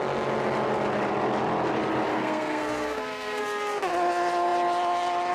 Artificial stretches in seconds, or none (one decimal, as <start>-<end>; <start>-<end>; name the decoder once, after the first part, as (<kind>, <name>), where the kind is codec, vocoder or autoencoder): 2.1-3.9 (codec, SNAC)